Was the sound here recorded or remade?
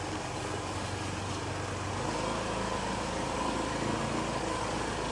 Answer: recorded